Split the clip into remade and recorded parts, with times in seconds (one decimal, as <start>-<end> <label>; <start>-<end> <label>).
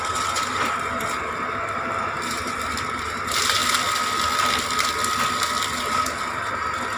0.0-3.6 remade; 3.6-5.8 recorded; 5.8-7.0 remade